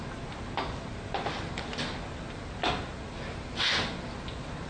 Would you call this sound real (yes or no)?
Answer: yes